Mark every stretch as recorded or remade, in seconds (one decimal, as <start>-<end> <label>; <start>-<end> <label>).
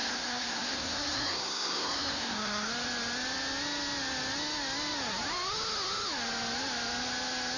0.0-2.7 remade; 2.7-7.6 recorded